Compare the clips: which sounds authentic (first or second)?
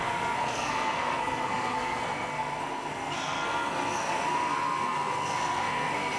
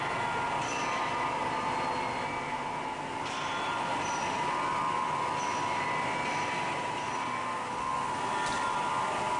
second